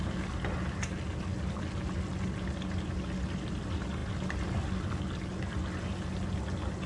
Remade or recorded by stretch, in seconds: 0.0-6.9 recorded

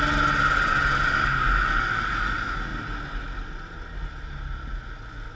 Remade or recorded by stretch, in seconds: 0.0-5.4 recorded

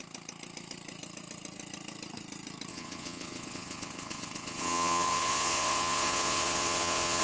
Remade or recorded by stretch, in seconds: 0.0-2.7 recorded; 2.7-7.2 remade

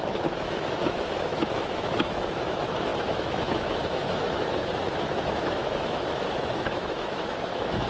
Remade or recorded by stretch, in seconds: 0.0-7.9 remade

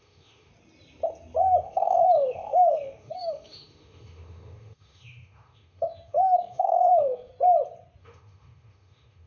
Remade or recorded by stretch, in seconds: 0.0-0.5 remade; 0.5-1.6 recorded; 1.6-7.3 remade; 7.3-8.0 recorded; 8.0-9.3 remade

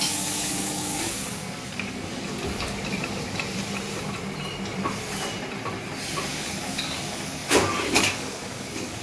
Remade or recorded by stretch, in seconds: 0.0-2.3 remade; 2.3-6.3 recorded; 6.3-9.0 remade

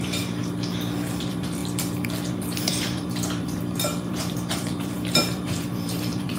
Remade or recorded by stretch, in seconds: 0.0-0.4 remade; 0.4-1.2 recorded; 1.2-1.6 remade; 1.6-2.3 recorded; 2.3-6.4 remade

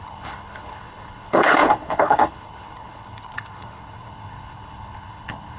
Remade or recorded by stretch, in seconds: 0.0-5.6 remade